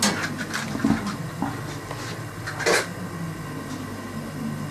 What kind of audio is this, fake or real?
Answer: real